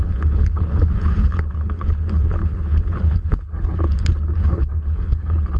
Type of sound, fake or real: fake